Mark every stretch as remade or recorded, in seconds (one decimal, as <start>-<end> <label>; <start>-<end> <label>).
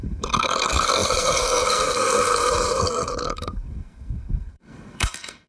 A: 0.0-5.5 remade